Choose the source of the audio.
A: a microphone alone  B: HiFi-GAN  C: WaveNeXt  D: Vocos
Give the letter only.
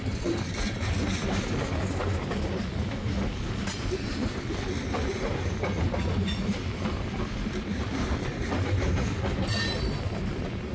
A